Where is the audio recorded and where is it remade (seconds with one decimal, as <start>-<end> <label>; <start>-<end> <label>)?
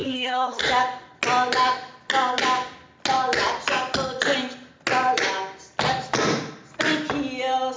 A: 0.0-0.6 remade; 0.6-7.8 recorded